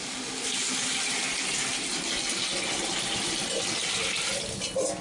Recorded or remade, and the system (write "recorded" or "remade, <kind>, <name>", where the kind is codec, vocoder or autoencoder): recorded